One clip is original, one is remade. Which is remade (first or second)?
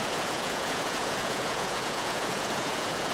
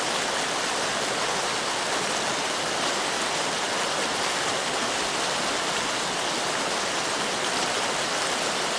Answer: first